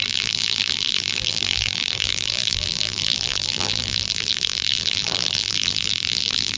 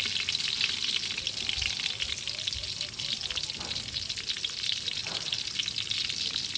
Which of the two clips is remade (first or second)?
first